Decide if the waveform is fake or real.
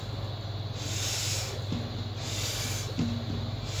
real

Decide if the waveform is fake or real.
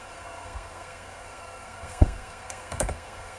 fake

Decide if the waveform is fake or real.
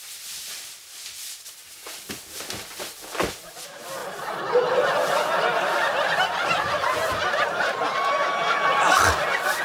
real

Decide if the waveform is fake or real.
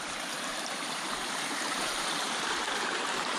fake